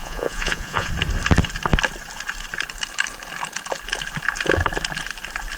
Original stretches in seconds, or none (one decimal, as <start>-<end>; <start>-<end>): 0.9-5.6